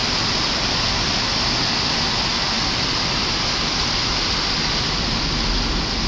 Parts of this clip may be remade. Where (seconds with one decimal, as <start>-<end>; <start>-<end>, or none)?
none